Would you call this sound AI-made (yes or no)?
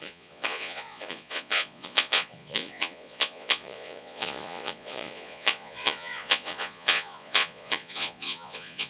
yes